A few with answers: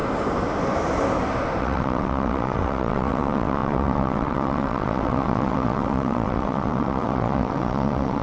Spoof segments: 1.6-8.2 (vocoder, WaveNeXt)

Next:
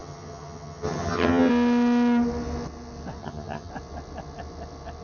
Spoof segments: 0.0-1.5 (vocoder, HiFi-GAN); 3.2-3.7

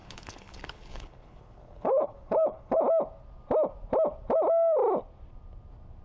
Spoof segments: 0.0-2.8 (codec, HILCodec)

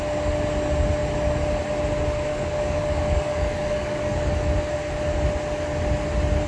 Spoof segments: 2.3-4.3 (codec, DAC)

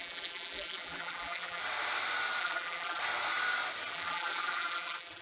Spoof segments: 0.0-1.6 (vocoder, BigVGAN v2); 2.4-3.0; 3.9-5.2

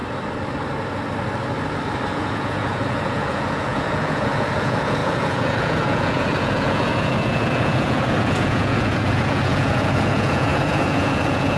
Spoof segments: 2.1-11.6 (vocoder, Vocos)

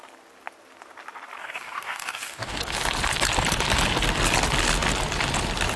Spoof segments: 1.4-2.6 (codec, DAC)

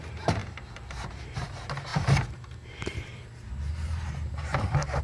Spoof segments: 0.0-5.0 (vocoder, BigVGAN v2)